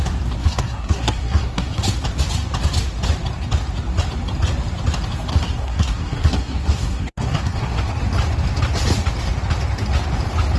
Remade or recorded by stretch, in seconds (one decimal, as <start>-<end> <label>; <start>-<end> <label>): 0.0-0.4 recorded; 0.4-1.8 remade; 1.8-5.3 recorded; 5.3-7.8 remade; 7.8-10.6 recorded